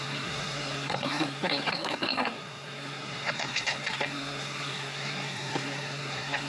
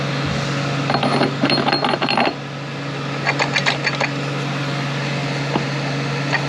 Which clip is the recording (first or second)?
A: second